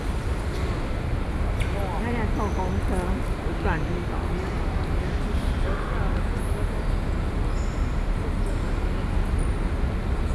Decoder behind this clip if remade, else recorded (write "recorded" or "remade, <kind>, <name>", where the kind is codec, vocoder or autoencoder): recorded